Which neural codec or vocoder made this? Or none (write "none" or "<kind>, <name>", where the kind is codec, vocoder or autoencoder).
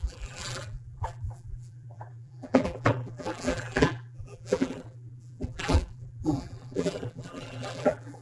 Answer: vocoder, BigVGAN v2